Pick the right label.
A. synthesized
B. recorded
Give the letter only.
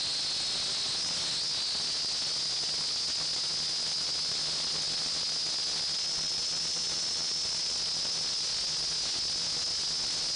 B